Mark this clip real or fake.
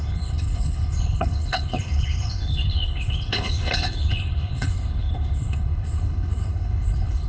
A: fake